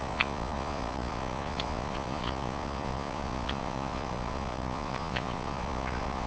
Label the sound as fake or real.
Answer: fake